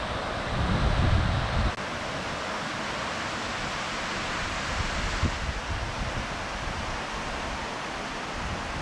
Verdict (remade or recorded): recorded